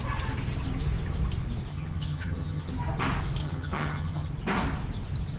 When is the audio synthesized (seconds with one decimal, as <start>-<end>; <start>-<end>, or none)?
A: 1.7-2.7; 3.4-4.3

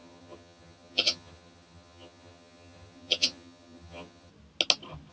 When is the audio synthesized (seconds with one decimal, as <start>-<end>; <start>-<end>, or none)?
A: 0.0-4.3

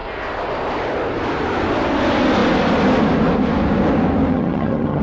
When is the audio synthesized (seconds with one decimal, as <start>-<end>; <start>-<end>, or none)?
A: 4.3-5.0

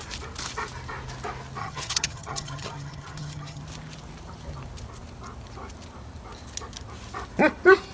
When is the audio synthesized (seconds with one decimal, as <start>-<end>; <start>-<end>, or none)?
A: 1.6-3.6